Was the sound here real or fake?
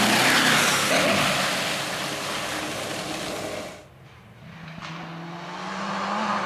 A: real